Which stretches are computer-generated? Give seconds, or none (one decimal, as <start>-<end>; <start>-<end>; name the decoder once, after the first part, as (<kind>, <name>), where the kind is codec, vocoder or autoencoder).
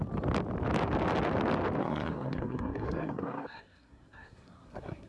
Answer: 1.8-5.1 (codec, SNAC)